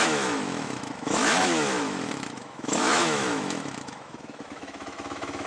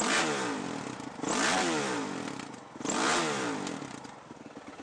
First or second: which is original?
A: second